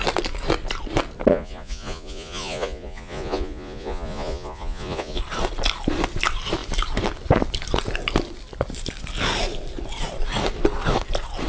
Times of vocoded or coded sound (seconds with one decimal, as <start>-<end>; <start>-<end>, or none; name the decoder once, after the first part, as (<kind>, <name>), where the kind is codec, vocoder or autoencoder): 1.3-5.2 (vocoder, Vocos)